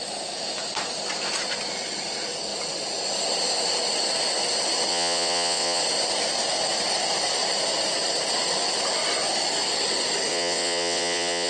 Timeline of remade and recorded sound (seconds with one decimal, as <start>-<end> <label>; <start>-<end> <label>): 0.0-4.9 recorded; 4.9-5.8 remade; 5.8-10.3 recorded; 10.3-11.5 remade